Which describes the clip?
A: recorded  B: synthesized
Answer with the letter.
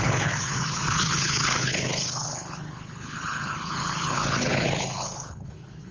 B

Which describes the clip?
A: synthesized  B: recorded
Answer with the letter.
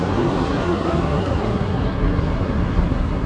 A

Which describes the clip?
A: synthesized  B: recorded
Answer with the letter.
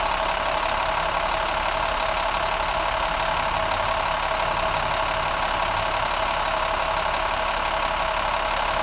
B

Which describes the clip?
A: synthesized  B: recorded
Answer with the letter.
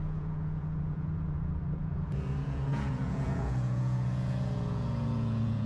A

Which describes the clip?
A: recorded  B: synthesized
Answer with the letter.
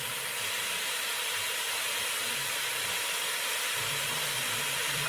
B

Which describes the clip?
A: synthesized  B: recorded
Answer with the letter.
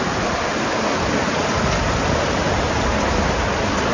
B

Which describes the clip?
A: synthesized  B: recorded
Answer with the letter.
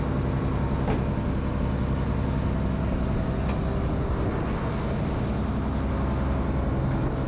B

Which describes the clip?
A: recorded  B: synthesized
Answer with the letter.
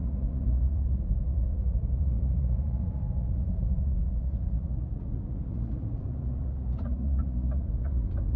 B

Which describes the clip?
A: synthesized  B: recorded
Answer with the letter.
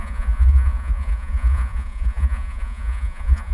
A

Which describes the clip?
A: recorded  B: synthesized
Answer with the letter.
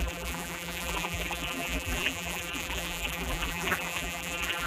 B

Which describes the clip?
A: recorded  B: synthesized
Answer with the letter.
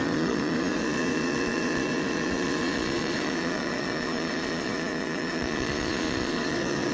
B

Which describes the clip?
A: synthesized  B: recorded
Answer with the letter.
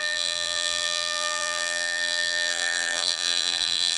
A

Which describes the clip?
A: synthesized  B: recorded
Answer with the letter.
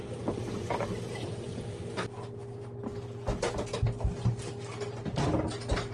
B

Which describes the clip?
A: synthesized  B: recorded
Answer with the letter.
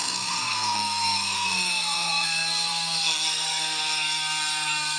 A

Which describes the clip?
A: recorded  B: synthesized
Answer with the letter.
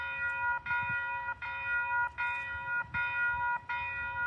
A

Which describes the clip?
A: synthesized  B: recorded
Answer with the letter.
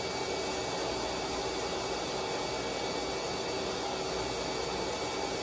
B